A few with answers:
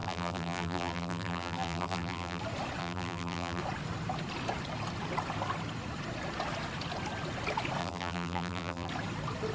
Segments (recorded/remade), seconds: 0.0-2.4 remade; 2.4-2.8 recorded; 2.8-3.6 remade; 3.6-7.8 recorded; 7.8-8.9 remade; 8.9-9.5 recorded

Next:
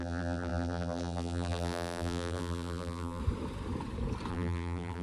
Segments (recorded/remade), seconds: 0.0-3.2 remade; 3.2-4.3 recorded; 4.3-5.0 remade

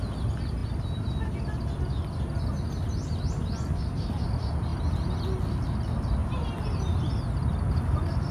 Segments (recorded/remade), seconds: 0.0-8.3 recorded

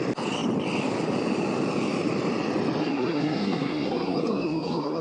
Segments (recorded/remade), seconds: 0.0-2.8 recorded; 2.8-5.0 remade

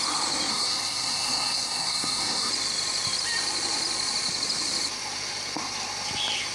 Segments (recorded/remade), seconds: 0.0-0.5 recorded; 0.5-2.5 remade; 2.5-6.5 recorded

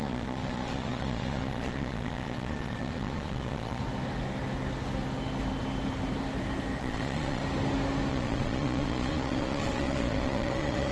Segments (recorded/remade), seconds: 0.0-3.8 remade; 3.8-6.8 recorded; 6.8-7.4 remade; 7.4-8.1 recorded; 8.1-10.9 remade

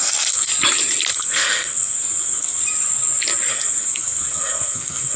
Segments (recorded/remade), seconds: 0.0-0.5 remade; 0.5-1.1 recorded; 1.1-2.6 remade; 2.6-3.5 recorded; 3.5-5.2 remade